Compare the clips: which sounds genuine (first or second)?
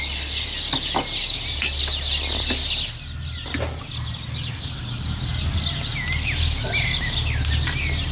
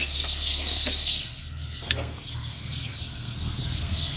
first